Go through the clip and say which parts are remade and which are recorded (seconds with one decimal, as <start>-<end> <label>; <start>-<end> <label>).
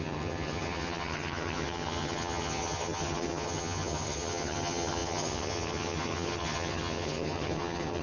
0.0-8.0 remade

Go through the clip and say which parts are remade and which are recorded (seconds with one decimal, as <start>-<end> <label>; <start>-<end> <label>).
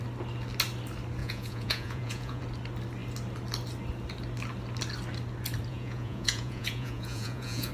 0.0-1.2 recorded; 1.2-2.4 remade; 2.4-5.7 recorded; 5.7-7.7 remade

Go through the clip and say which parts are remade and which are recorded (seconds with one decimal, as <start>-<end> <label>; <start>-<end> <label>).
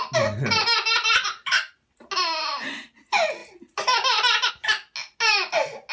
0.0-5.9 recorded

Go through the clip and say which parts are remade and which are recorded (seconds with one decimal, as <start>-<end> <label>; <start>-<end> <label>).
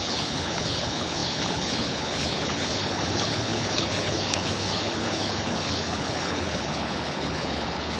0.0-8.0 remade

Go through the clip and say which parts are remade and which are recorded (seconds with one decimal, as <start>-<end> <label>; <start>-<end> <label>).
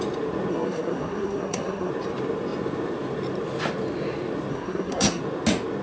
0.0-0.5 recorded; 0.5-1.9 remade; 1.9-4.5 recorded; 4.5-5.2 remade; 5.2-5.8 recorded